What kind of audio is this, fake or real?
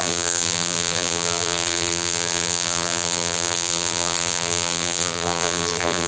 fake